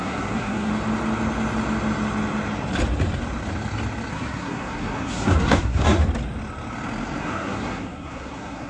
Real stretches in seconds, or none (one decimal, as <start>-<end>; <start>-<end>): 0.7-4.1; 6.0-7.2